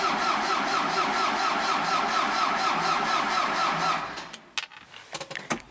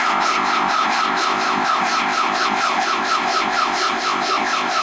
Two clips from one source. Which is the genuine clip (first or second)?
first